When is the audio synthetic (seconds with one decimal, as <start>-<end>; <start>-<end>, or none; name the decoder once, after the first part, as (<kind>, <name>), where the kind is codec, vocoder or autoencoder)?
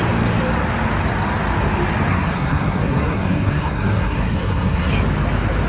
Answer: 2.1-4.9 (codec, SNAC)